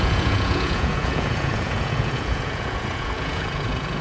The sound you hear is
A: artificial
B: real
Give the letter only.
A